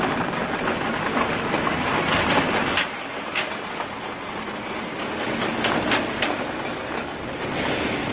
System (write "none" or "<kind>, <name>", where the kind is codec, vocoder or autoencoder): none